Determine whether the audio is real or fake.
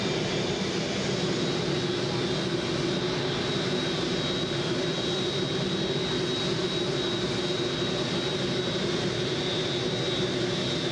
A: real